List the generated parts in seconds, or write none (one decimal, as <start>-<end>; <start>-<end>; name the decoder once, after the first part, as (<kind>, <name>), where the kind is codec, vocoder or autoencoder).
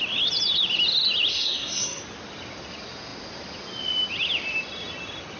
1.3-2.0 (codec, SNAC)